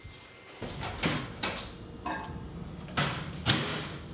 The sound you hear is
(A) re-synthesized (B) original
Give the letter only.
B